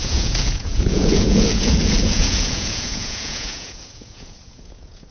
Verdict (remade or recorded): remade